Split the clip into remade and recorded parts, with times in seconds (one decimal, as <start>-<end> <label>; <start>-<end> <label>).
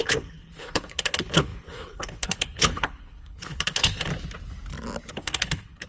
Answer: 0.0-4.1 remade; 4.1-5.1 recorded; 5.1-5.9 remade